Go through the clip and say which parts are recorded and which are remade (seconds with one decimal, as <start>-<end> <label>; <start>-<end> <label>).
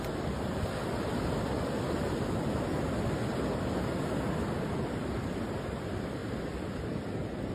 0.0-7.5 recorded